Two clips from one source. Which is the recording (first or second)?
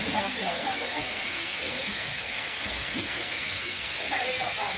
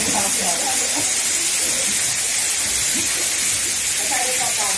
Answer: second